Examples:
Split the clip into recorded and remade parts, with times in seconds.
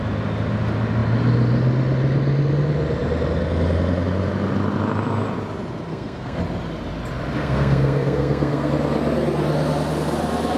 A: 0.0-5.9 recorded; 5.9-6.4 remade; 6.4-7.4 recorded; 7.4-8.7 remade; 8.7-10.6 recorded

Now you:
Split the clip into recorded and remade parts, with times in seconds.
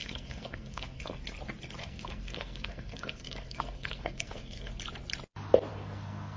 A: 0.0-1.2 remade; 1.2-1.8 recorded; 1.8-4.7 remade; 4.7-5.7 recorded; 5.7-6.4 remade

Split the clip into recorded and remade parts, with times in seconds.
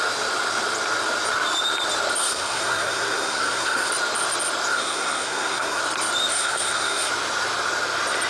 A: 0.0-2.2 recorded; 2.2-3.9 remade; 3.9-4.7 recorded; 4.7-5.8 remade; 5.8-6.3 recorded; 6.3-7.1 remade; 7.1-8.3 recorded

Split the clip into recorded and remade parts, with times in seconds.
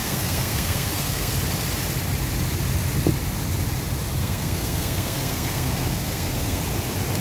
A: 0.0-1.3 remade; 1.3-4.2 recorded; 4.2-6.6 remade; 6.6-7.2 recorded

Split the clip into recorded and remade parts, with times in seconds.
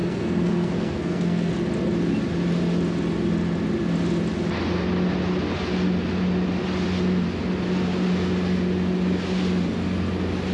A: 0.0-1.5 remade; 1.5-10.5 recorded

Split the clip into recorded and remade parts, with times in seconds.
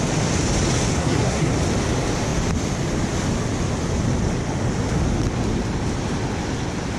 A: 0.0-1.0 recorded; 1.0-1.5 remade; 1.5-7.0 recorded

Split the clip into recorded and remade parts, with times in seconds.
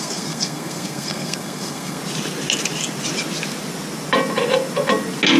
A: 0.0-2.0 remade; 2.0-5.4 recorded